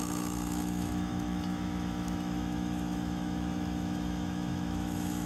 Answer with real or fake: fake